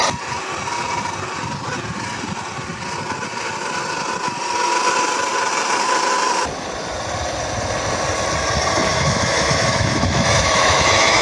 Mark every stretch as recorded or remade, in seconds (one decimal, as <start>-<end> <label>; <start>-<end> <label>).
0.0-8.9 recorded; 8.9-11.2 remade

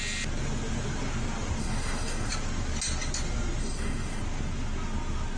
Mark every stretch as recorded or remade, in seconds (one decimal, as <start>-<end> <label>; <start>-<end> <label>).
0.0-1.6 recorded; 1.6-2.3 remade; 2.3-3.6 recorded; 3.6-4.2 remade; 4.2-5.4 recorded

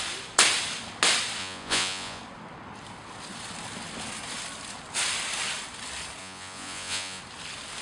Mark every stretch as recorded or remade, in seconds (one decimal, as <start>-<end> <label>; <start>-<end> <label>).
0.0-1.4 recorded; 1.4-2.2 remade; 2.2-6.2 recorded; 6.2-7.2 remade; 7.2-7.8 recorded

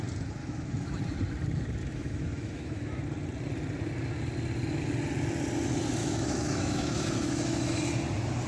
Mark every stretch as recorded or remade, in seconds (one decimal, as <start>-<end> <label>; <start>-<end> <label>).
0.0-0.4 recorded; 0.4-0.9 remade; 0.9-1.8 recorded; 1.8-3.0 remade; 3.0-6.0 recorded; 6.0-7.8 remade; 7.8-8.5 recorded